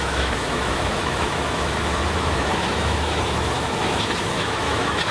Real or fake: fake